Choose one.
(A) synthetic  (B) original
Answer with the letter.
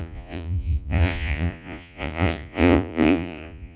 A